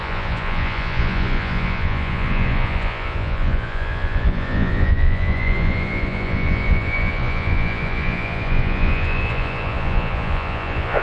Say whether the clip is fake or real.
fake